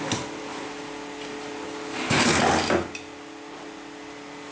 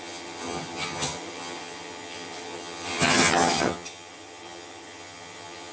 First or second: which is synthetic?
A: second